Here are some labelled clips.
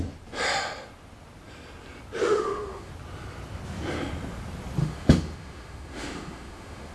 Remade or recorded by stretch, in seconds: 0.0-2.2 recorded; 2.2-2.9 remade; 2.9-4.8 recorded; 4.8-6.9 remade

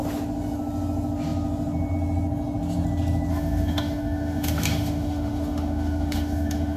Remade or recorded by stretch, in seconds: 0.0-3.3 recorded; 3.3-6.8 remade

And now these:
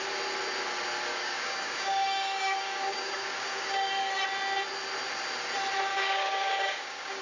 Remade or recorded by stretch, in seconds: 0.0-1.1 recorded; 1.1-4.1 remade; 4.1-5.9 recorded; 5.9-7.2 remade

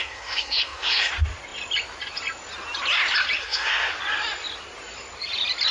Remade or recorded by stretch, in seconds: 0.0-1.1 remade; 1.1-3.4 recorded; 3.4-3.9 remade; 3.9-5.7 recorded

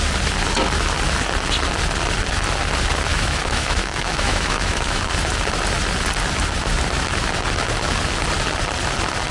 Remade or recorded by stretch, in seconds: 0.0-3.1 recorded; 3.1-5.1 remade; 5.1-9.3 recorded

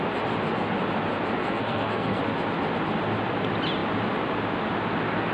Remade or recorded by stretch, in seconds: 0.0-1.4 recorded; 1.4-2.2 remade; 2.2-5.3 recorded